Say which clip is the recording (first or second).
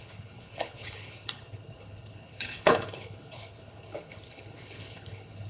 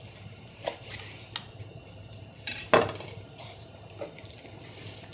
second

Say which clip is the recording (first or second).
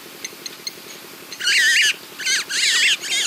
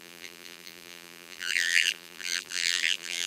first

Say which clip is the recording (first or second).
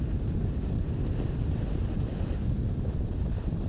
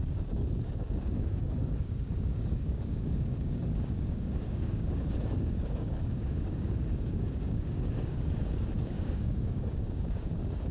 first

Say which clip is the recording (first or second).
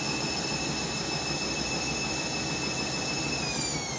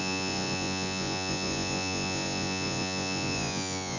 first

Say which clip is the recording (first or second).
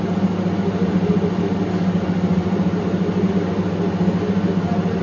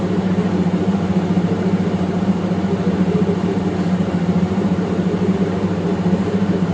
first